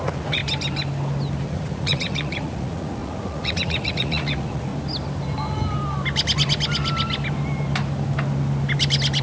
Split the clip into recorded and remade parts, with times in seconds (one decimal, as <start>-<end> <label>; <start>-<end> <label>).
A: 0.0-0.4 remade; 0.4-1.4 recorded; 1.4-4.7 remade; 4.7-9.2 recorded